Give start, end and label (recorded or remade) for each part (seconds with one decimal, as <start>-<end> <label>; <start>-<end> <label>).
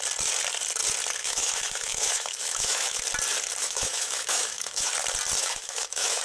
0.0-1.2 recorded; 1.2-3.0 remade; 3.0-3.6 recorded; 3.6-4.9 remade; 4.9-5.4 recorded; 5.4-6.2 remade